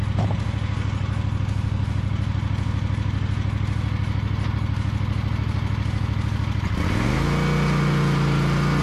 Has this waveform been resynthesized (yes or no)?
no